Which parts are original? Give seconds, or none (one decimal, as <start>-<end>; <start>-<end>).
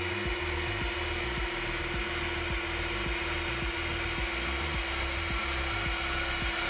0.0-6.7